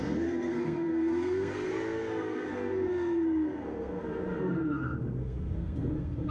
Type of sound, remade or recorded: remade